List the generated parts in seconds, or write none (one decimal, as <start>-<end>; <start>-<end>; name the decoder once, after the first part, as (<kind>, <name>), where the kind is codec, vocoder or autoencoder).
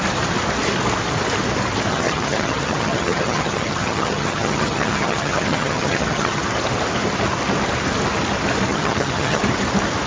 1.9-6.4 (vocoder, HiFi-GAN); 8.7-9.4